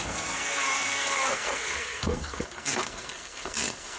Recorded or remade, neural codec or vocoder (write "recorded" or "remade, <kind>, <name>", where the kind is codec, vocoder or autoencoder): remade, codec, SNAC